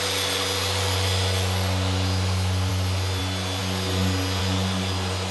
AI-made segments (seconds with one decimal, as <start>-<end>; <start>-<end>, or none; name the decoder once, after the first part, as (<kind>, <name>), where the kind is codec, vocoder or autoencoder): none